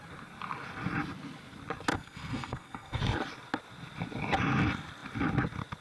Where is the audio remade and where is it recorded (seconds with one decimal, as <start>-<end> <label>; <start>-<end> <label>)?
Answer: 0.0-1.9 recorded; 1.9-3.0 remade; 3.0-5.8 recorded